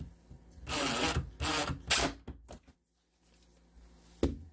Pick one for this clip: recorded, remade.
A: recorded